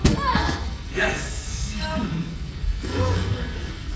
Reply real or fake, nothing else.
fake